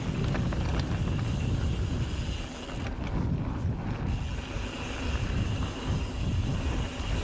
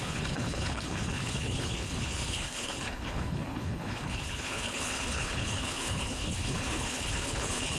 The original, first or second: first